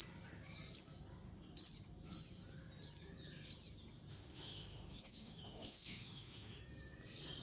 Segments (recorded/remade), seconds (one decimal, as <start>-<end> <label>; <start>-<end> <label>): 0.0-4.1 recorded; 4.1-6.6 remade; 6.6-7.4 recorded